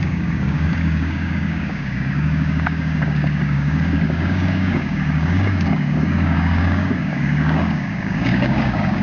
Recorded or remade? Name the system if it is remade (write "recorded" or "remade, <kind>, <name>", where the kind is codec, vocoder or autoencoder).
remade, codec, DAC